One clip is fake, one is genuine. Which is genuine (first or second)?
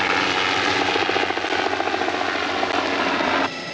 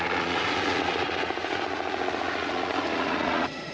first